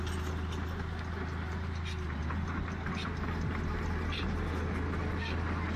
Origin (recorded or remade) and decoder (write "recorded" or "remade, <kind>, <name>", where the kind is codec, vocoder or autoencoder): recorded